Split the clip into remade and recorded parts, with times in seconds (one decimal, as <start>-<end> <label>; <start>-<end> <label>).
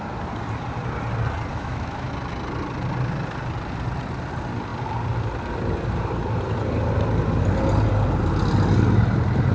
0.0-1.5 recorded; 1.5-2.1 remade; 2.1-9.5 recorded